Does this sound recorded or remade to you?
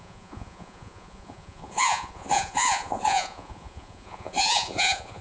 remade